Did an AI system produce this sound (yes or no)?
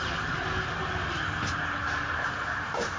no